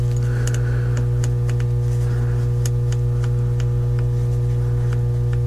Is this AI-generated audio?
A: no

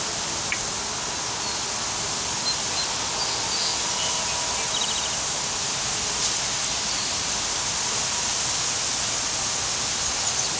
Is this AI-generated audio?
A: no